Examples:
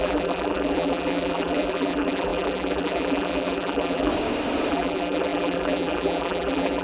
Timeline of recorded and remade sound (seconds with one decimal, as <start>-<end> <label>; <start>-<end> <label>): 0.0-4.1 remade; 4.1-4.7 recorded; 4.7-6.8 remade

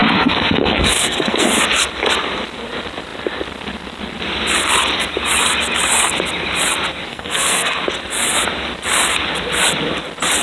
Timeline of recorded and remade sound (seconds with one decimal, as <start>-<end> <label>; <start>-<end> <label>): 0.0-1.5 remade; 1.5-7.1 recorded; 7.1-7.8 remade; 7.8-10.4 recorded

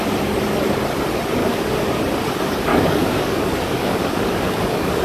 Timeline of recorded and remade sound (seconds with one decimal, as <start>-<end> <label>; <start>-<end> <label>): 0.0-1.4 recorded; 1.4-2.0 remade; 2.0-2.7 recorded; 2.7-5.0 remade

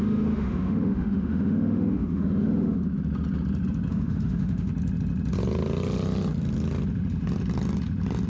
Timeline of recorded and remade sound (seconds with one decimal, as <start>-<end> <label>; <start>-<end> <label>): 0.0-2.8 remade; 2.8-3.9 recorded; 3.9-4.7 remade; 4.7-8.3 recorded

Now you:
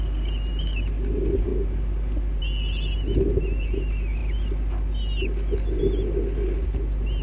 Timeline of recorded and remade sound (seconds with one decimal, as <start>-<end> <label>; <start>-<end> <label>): 0.0-7.2 recorded